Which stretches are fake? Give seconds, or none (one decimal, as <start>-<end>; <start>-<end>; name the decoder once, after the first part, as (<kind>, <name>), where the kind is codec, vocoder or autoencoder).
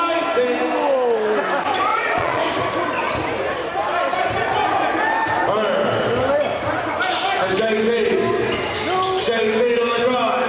1.9-2.4 (vocoder, Vocos)